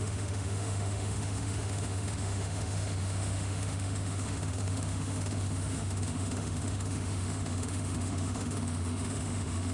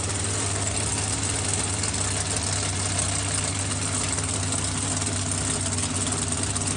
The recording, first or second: second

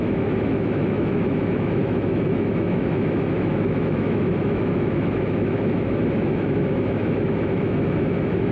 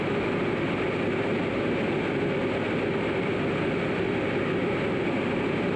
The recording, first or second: second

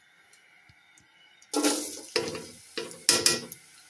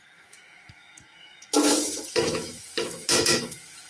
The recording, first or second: first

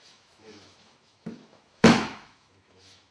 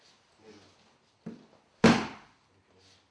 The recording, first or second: second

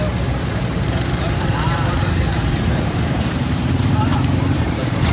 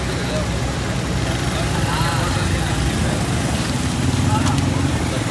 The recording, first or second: second